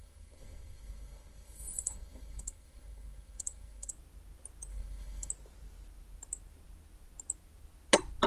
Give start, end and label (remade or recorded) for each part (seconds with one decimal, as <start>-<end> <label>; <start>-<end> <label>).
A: 0.0-3.9 remade; 3.9-4.7 recorded; 4.7-5.3 remade; 5.3-8.3 recorded

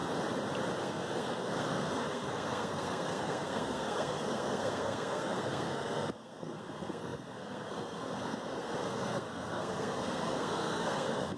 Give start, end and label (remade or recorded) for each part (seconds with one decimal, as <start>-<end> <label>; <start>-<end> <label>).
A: 0.0-0.8 recorded; 0.8-11.4 remade

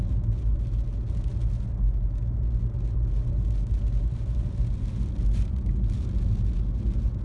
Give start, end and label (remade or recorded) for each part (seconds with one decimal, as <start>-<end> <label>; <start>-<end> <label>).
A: 0.0-7.2 recorded

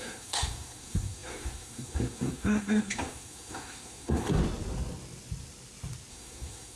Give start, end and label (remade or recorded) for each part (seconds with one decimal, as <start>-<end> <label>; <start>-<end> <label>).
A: 0.0-4.4 remade; 4.4-6.1 recorded; 6.1-6.8 remade